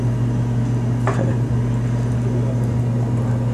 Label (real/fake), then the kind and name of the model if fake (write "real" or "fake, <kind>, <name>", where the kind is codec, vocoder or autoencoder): real